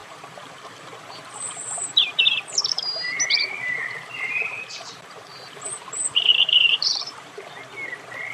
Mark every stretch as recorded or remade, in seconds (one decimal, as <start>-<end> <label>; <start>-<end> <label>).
0.0-2.2 remade; 2.2-2.6 recorded; 2.6-7.5 remade; 7.5-8.3 recorded